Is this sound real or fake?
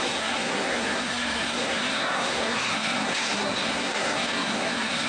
fake